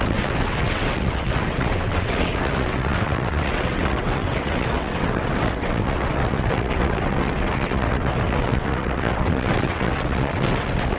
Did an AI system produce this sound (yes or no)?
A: yes